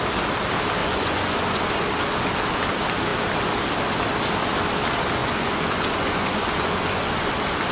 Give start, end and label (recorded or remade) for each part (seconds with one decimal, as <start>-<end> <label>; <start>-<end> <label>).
0.0-0.8 recorded; 0.8-1.7 remade; 1.7-5.2 recorded; 5.2-7.3 remade; 7.3-7.7 recorded